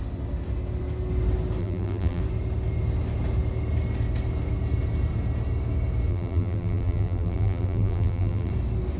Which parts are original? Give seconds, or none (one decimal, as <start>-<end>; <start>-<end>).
0.0-1.6; 2.2-6.1; 8.5-9.0